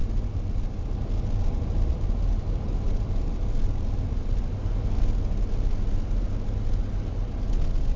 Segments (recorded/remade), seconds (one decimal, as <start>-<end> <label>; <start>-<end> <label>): 0.0-8.0 recorded